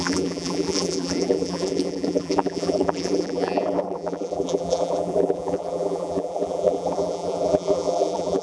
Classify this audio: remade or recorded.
remade